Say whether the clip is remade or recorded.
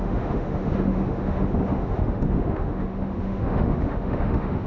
remade